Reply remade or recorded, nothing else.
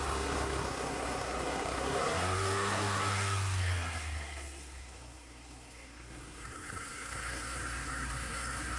remade